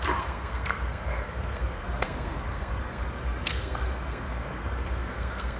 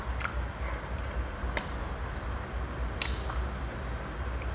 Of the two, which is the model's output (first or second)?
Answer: first